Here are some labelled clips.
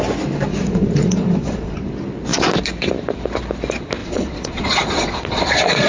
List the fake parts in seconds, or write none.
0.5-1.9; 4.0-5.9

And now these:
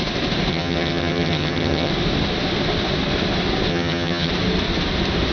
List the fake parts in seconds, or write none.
0.5-1.9; 3.7-4.3

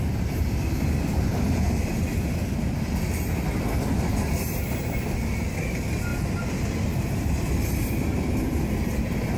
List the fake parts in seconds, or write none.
none